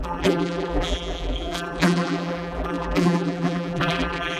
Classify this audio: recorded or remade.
remade